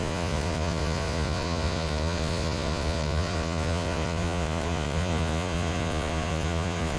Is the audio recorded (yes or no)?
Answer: no